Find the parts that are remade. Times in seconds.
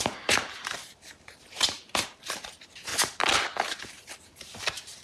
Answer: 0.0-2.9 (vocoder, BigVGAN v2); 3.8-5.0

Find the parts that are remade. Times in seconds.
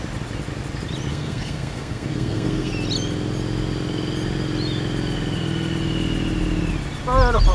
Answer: 1.1-2.7 (codec, SNAC)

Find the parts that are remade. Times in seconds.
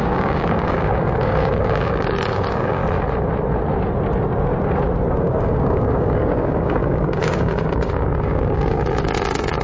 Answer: 0.0-2.8 (codec, DAC); 5.2-9.6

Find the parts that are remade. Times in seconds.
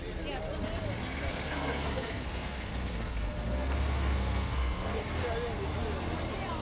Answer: 1.3-5.0 (codec, SNAC)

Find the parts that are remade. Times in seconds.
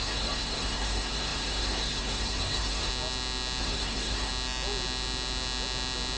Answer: 0.0-2.9 (codec, SNAC); 3.6-4.3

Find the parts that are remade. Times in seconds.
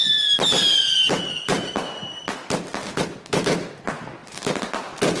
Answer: 4.2-4.7 (vocoder, BigVGAN v2)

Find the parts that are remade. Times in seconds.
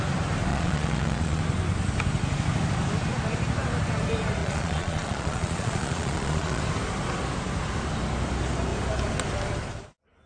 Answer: 0.5-1.4 (vocoder, Vocos); 4.4-6.6